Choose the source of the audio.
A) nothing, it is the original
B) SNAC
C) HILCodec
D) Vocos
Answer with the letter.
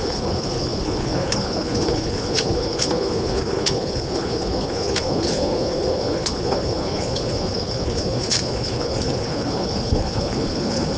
C